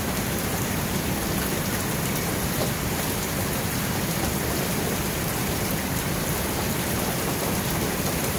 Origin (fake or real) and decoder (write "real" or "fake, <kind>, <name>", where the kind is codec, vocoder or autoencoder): fake, vocoder, BigVGAN v2